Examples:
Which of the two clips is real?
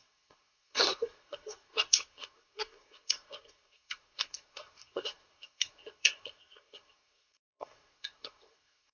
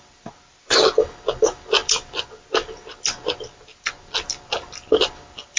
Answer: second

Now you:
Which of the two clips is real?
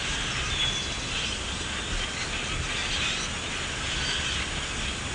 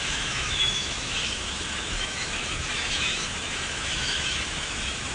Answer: first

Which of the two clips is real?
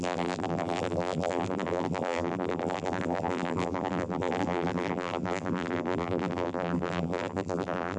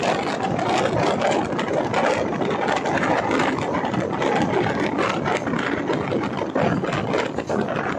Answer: second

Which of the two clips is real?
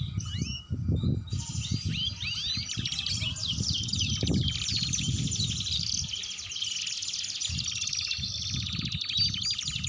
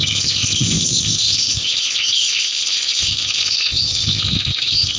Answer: first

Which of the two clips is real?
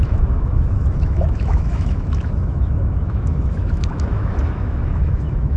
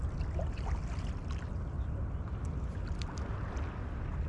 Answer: second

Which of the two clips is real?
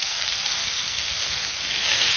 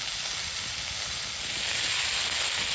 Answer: second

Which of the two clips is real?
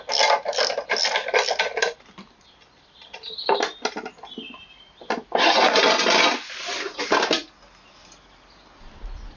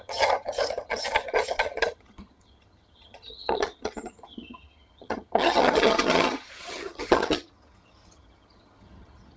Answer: first